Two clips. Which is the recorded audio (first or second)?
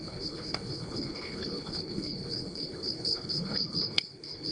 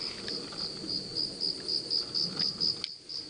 second